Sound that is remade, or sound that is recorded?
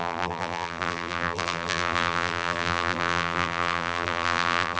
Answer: remade